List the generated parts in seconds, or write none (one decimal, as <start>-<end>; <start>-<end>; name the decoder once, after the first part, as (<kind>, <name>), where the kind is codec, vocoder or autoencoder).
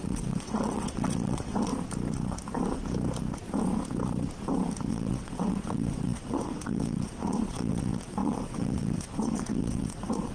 0.0-1.7 (vocoder, WaveNeXt); 4.9-10.3